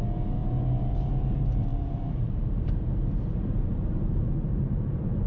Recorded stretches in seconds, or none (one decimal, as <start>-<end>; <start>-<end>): 0.0-1.7; 2.8-3.3